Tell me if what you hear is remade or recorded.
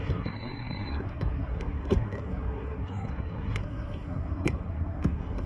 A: remade